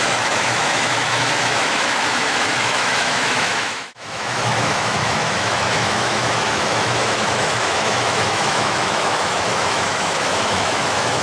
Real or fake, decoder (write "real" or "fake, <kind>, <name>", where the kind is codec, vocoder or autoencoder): fake, autoencoder, DAC-VAE